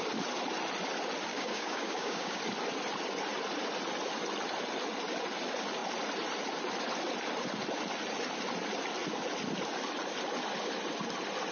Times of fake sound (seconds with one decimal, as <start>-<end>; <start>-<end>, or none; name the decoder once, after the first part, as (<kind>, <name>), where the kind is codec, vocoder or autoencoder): 1.3-2.4 (codec, DAC)